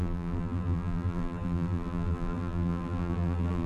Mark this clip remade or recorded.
remade